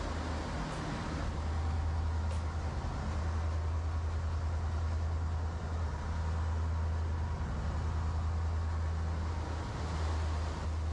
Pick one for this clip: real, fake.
real